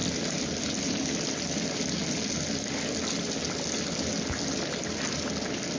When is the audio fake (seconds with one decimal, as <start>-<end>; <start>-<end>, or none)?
none